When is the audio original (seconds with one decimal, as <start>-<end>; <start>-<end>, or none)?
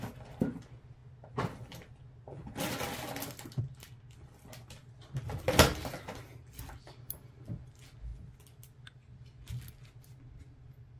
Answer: 0.0-11.0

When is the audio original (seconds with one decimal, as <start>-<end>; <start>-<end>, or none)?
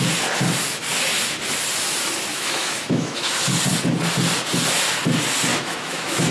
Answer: 0.0-2.3; 3.3-5.5